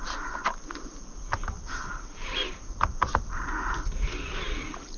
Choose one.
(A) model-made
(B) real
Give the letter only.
B